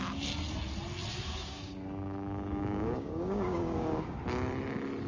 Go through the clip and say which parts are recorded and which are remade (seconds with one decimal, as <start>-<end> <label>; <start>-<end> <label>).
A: 0.0-1.1 recorded; 1.1-4.2 remade; 4.2-5.1 recorded